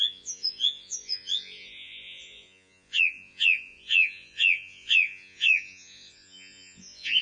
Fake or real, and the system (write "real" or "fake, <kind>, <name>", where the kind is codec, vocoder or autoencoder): fake, vocoder, Vocos